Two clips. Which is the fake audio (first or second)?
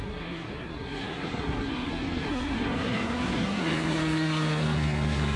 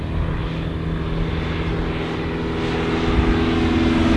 first